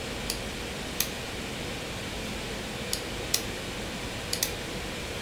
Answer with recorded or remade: recorded